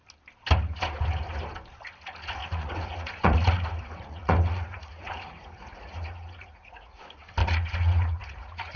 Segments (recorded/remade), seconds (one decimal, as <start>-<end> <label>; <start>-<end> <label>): 0.0-2.4 recorded; 2.4-7.0 remade; 7.0-7.4 recorded; 7.4-8.8 remade